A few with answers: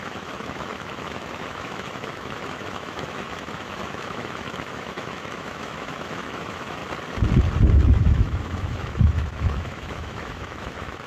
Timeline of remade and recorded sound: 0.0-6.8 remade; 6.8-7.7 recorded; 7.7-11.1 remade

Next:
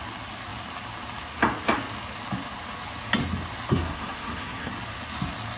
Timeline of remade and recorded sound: 0.0-3.7 recorded; 3.7-4.7 remade; 4.7-5.6 recorded

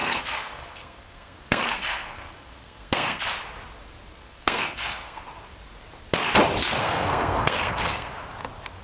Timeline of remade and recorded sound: 0.0-3.2 remade; 3.2-4.1 recorded; 4.1-5.2 remade; 5.2-6.8 recorded; 6.8-8.1 remade; 8.1-8.8 recorded

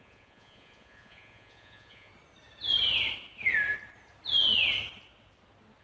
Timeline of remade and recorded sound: 0.0-2.1 remade; 2.1-5.8 recorded

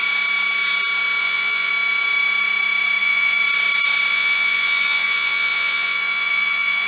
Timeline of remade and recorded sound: 0.0-1.2 recorded; 1.2-1.7 remade; 1.7-3.0 recorded; 3.0-3.4 remade; 3.4-4.1 recorded; 4.1-6.9 remade

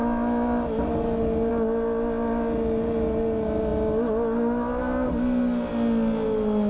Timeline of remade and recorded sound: 0.0-6.7 recorded